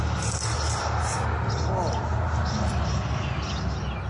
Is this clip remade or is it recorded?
recorded